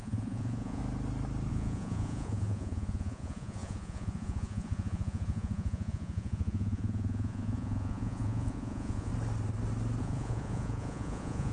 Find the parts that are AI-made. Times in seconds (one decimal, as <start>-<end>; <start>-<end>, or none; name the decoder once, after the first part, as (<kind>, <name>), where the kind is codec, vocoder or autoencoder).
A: 0.0-0.8 (vocoder, Vocos); 1.5-9.1; 10.0-11.5